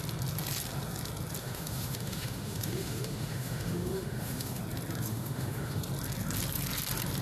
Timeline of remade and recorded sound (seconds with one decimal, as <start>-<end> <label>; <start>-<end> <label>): 0.0-1.4 recorded; 1.4-4.6 remade; 4.6-5.1 recorded; 5.1-5.8 remade; 5.8-7.2 recorded